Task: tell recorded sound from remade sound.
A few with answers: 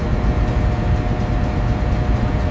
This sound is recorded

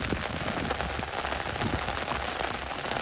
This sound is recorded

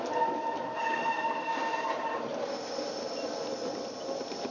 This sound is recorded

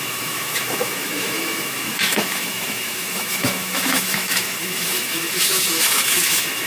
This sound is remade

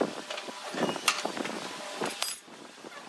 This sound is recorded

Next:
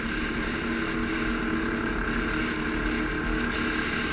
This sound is recorded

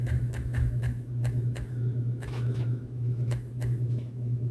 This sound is remade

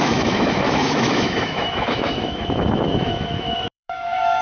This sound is remade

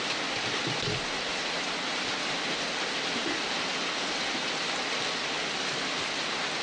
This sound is recorded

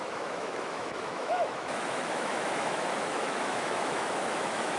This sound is remade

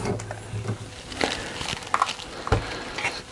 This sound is recorded